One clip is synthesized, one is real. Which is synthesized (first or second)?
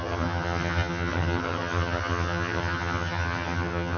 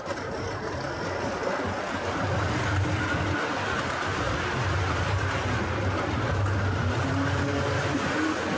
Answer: first